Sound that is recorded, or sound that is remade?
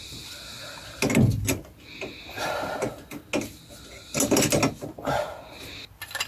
recorded